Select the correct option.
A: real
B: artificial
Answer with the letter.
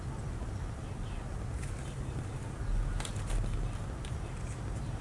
A